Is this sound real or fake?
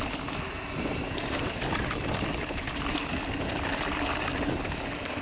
real